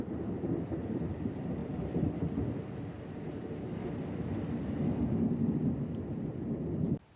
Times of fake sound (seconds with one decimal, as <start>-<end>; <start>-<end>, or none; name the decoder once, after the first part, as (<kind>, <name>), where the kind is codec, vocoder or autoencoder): 0.0-1.6 (vocoder, BigVGAN v2); 3.9-7.2